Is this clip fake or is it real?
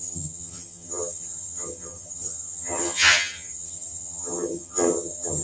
fake